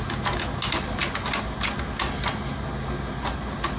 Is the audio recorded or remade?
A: recorded